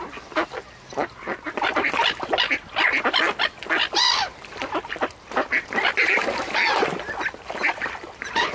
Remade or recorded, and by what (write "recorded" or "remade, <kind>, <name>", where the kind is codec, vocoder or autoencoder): recorded